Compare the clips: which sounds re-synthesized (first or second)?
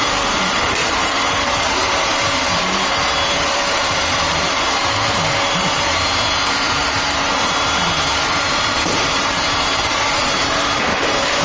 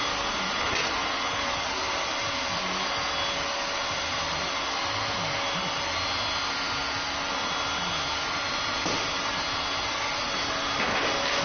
first